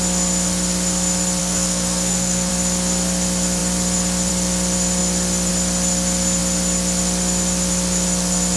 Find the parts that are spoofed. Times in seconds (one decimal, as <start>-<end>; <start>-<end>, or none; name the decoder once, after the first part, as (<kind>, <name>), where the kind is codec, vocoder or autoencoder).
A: 1.4-2.5 (codec, SNAC)